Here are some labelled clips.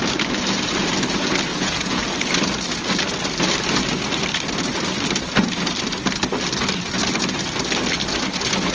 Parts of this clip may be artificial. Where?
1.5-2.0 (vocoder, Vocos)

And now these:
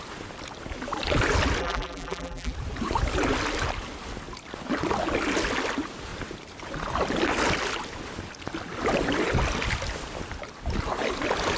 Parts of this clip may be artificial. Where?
1.6-2.5 (vocoder, BigVGAN v2)

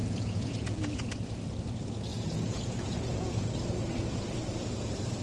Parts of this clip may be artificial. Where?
0.0-1.1 (vocoder, Vocos); 2.1-3.5

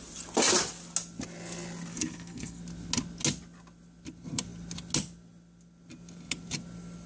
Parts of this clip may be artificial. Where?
1.9-2.6 (codec, SNAC)

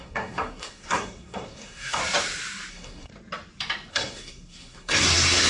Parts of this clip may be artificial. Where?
0.0-2.0 (codec, SNAC); 2.7-3.1; 3.9-5.5

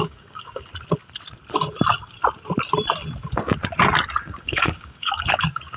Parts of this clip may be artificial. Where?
0.0-0.7 (codec, DAC); 4.2-5.8

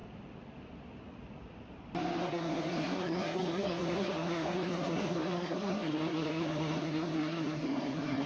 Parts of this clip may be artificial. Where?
2.2-8.3 (codec, SNAC)